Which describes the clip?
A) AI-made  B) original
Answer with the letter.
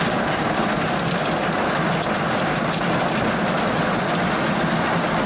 B